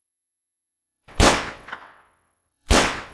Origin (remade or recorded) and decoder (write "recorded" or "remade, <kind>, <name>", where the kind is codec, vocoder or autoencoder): remade, vocoder, WaveNeXt